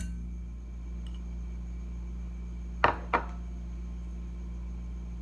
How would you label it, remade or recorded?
recorded